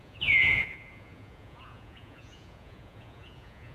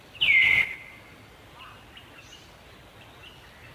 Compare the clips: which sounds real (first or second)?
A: second